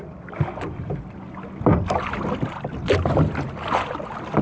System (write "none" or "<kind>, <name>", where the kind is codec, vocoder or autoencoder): none